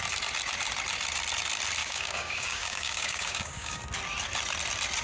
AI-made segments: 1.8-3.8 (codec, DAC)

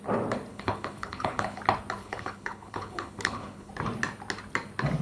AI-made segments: 0.5-1.6 (codec, HILCodec); 2.0-3.7

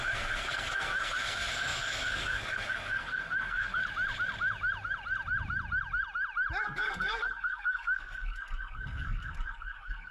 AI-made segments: 0.0-3.8 (codec, SNAC); 6.6-10.1

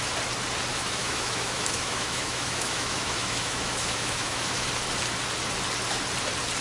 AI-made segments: 0.7-4.7 (autoencoder, DAC-VAE)

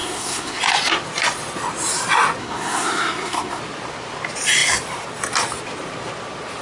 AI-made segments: 0.0-0.6 (codec, SNAC); 2.4-3.6

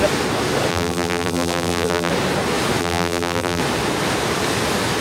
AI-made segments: 0.7-2.1 (vocoder, BigVGAN v2); 2.8-3.6

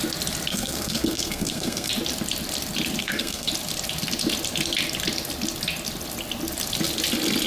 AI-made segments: 0.5-1.9 (codec, SNAC); 3.0-3.5

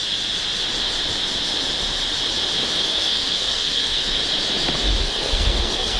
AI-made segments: 2.8-4.2 (codec, SNAC); 5.0-6.0